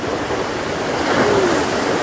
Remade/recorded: recorded